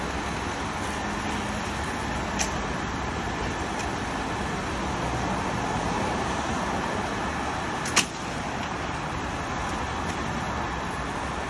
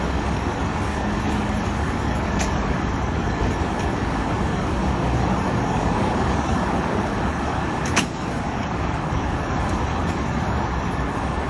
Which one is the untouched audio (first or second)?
first